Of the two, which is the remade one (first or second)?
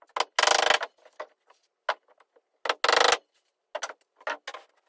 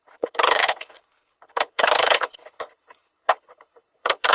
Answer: second